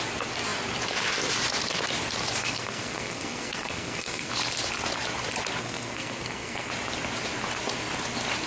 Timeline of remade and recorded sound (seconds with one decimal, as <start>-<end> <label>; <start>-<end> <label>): 0.0-2.4 recorded; 2.4-4.3 remade; 4.3-5.6 recorded; 5.6-6.7 remade; 6.7-8.5 recorded